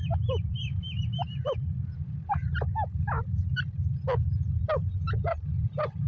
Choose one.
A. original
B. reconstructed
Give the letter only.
A